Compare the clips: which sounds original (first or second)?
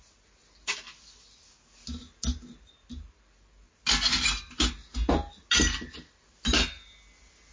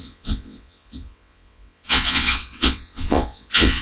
first